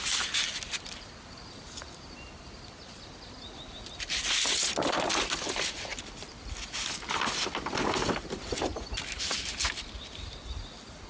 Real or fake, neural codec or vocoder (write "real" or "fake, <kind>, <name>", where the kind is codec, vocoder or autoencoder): real